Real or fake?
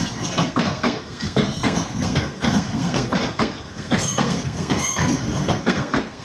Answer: fake